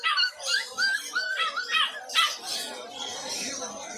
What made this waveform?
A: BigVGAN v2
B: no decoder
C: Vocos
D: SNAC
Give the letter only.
B